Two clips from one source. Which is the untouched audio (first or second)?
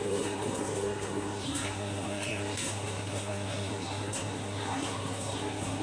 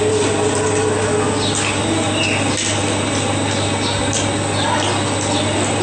second